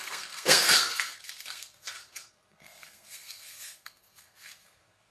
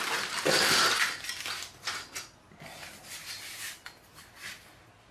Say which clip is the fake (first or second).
first